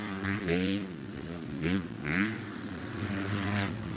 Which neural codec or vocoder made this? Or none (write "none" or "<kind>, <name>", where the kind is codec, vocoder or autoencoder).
vocoder, WaveNeXt